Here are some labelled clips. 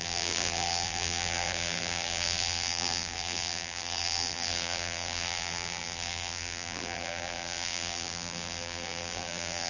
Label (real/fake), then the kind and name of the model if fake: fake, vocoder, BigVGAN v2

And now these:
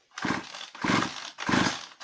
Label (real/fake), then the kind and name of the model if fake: real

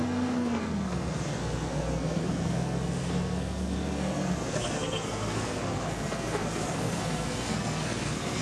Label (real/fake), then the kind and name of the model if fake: fake, codec, SNAC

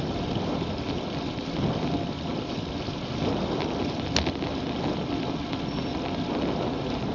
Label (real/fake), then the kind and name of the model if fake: real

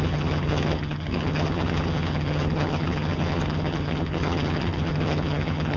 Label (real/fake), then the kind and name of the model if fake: fake, vocoder, HiFi-GAN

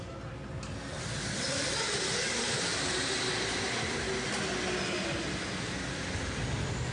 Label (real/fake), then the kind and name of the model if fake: real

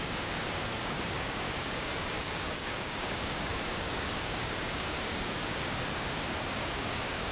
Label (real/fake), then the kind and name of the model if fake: fake, codec, DAC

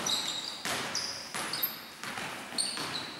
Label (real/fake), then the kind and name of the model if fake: real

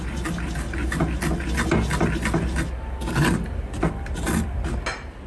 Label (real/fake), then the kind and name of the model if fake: real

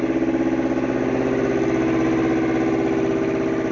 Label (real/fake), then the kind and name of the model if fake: real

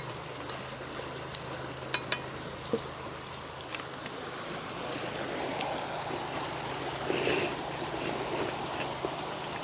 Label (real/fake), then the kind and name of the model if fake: real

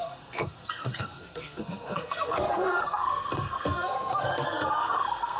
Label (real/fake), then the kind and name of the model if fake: fake, codec, SNAC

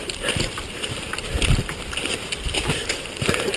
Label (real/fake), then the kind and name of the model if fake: real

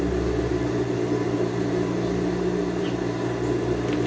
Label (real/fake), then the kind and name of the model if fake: real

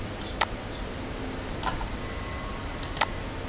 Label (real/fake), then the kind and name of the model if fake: fake, vocoder, BigVGAN v2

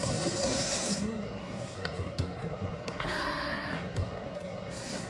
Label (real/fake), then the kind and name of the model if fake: fake, codec, SNAC